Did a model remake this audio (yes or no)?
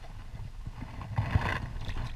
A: no